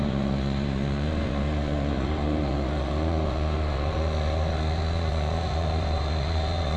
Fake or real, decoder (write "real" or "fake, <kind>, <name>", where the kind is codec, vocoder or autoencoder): fake, vocoder, Vocos